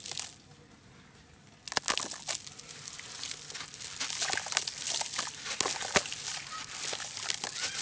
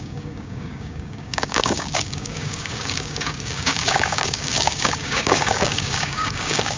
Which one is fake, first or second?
second